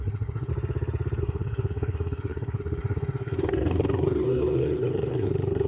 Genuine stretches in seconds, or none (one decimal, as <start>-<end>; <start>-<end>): 0.5-1.2